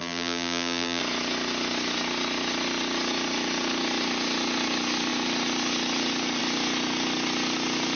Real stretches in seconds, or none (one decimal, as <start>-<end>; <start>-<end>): 1.0-8.0